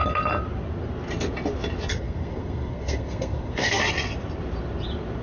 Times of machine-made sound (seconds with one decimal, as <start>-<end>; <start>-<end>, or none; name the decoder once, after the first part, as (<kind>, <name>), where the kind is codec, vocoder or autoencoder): 1.9-3.8 (codec, SNAC)